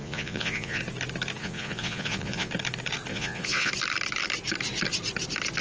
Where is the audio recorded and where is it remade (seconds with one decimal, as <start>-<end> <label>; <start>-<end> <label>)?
0.0-0.8 remade; 0.8-1.4 recorded; 1.4-2.5 remade; 2.5-3.1 recorded; 3.1-3.7 remade; 3.7-5.6 recorded